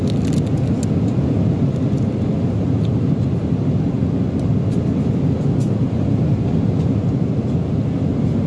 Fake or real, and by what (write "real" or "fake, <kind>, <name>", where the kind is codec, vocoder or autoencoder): real